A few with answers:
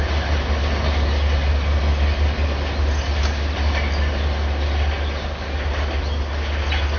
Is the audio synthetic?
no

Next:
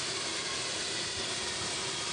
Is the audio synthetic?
no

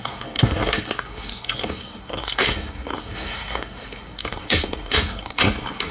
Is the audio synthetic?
yes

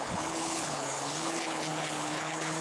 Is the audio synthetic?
yes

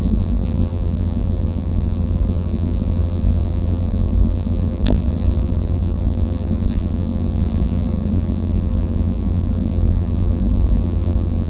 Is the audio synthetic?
yes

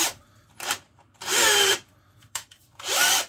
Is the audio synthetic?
yes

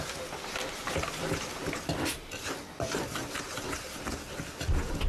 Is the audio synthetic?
no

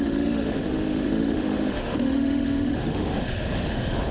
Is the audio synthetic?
yes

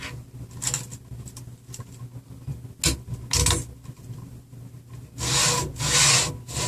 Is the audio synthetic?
no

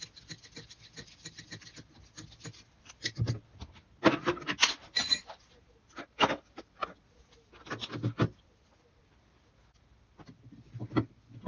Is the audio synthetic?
no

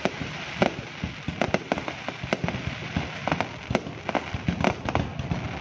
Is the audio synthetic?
no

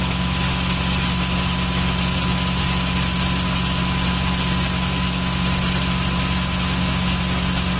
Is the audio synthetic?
no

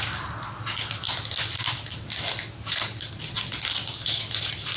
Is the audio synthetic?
no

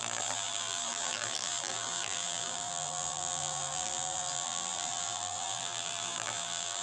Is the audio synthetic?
yes